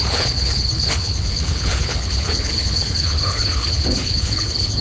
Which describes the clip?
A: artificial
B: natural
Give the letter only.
A